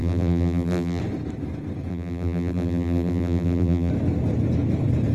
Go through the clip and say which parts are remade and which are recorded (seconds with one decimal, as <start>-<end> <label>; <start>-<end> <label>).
0.0-1.0 remade; 1.0-1.9 recorded; 1.9-3.9 remade; 3.9-5.1 recorded